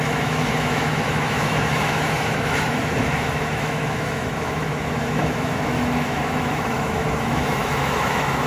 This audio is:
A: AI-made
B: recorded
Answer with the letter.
A